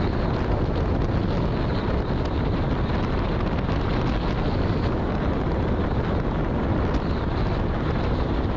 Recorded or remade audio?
recorded